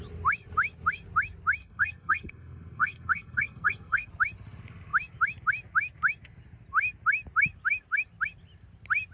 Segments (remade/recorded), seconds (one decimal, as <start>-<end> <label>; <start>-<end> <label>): 0.0-1.6 recorded; 1.6-4.1 remade; 4.1-9.1 recorded